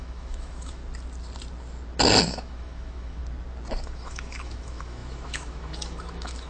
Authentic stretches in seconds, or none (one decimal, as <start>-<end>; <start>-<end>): 0.8-2.2; 3.2-3.8